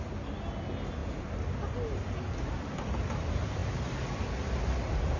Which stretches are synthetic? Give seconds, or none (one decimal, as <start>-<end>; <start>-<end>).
none

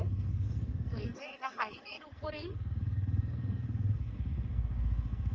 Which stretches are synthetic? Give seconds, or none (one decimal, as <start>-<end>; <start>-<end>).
0.0-5.3

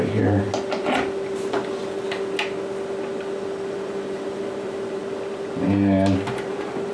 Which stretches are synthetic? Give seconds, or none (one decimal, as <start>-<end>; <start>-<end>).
0.0-0.5; 3.7-5.0; 6.5-6.9

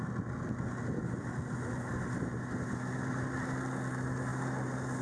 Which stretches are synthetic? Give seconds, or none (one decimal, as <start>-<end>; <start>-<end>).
none